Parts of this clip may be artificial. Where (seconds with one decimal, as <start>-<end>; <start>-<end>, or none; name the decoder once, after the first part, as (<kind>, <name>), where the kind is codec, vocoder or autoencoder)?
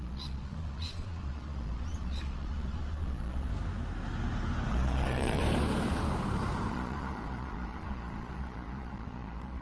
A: 0.0-3.5 (vocoder, Vocos); 4.7-5.4; 6.7-9.6